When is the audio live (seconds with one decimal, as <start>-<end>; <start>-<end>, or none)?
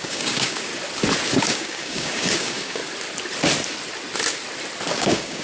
0.7-1.4; 2.8-4.9